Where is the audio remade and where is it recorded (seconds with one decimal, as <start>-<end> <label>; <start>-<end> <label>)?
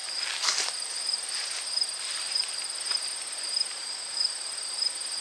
0.0-3.1 remade; 3.1-5.2 recorded